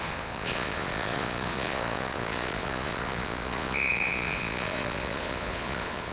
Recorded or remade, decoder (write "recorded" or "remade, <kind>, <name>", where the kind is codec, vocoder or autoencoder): remade, vocoder, Vocos